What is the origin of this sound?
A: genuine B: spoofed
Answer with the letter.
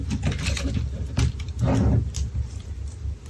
A